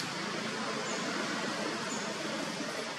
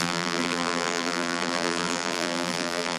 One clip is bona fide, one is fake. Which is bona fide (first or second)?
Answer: first